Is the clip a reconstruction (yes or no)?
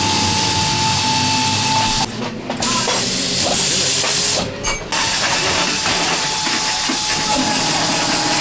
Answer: no